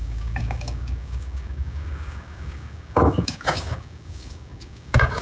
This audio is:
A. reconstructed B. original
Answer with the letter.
A